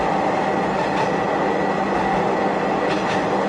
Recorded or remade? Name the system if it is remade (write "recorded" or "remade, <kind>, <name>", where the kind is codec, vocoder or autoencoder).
recorded